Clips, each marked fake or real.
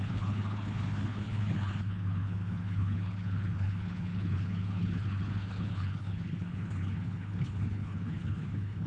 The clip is fake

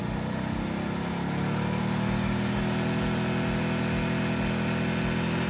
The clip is real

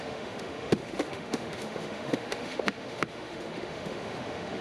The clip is fake